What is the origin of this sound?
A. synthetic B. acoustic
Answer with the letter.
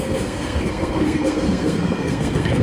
A